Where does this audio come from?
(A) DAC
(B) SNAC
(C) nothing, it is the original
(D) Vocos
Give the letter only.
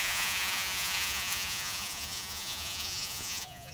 D